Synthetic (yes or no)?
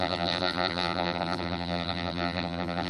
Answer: yes